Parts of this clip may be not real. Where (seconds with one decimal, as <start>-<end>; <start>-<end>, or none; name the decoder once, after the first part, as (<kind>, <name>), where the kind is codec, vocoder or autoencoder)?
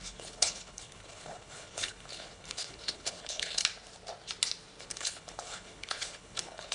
0.0-3.6 (codec, HILCodec); 4.8-6.7